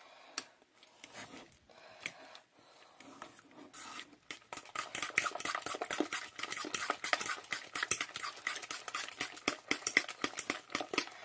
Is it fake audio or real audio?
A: real